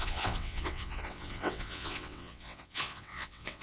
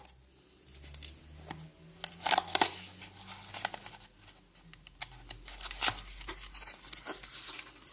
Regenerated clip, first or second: first